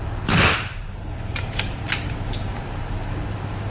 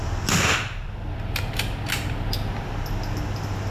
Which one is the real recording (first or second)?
second